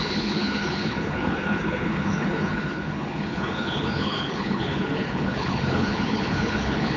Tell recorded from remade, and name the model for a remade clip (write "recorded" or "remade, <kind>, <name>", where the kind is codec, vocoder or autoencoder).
remade, codec, HILCodec